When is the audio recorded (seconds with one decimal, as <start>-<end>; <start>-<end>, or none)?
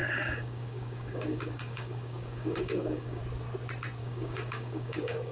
3.2-4.0